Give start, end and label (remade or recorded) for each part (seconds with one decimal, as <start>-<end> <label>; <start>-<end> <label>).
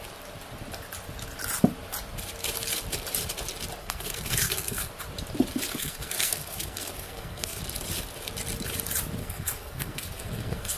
0.0-3.8 recorded; 3.8-4.9 remade; 4.9-5.7 recorded; 5.7-7.6 remade; 7.6-9.2 recorded; 9.2-10.8 remade